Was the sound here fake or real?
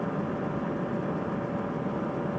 real